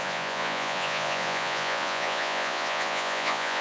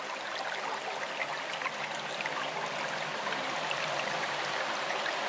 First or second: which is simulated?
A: first